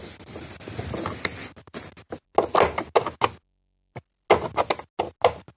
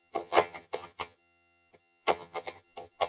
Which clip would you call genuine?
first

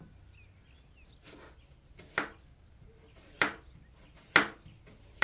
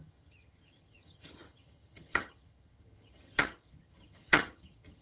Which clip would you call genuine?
first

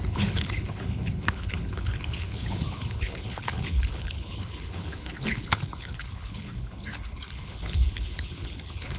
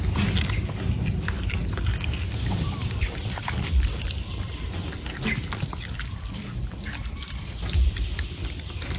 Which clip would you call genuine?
second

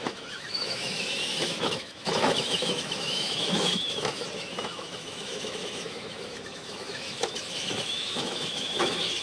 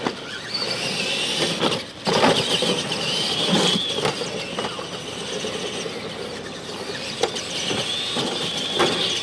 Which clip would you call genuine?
second